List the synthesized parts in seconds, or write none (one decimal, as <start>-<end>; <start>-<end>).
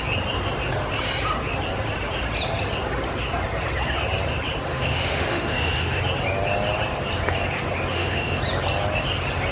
4.7-6.0; 7.9-8.4